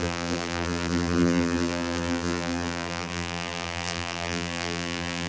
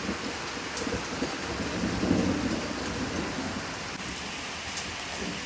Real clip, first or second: second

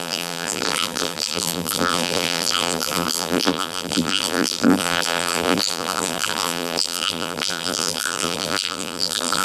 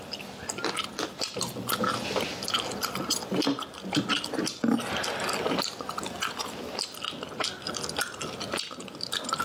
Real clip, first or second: second